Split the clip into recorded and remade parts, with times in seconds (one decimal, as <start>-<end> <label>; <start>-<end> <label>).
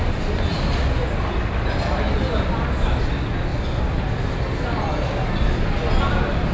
0.0-6.5 recorded